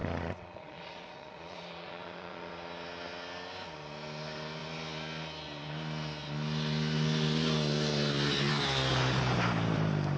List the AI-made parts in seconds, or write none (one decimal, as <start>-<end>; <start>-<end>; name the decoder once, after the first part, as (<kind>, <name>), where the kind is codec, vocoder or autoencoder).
0.0-2.5 (vocoder, Vocos)